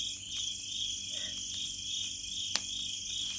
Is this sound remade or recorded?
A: recorded